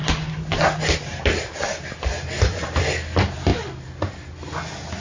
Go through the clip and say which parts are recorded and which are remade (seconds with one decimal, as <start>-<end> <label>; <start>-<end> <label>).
0.0-5.0 recorded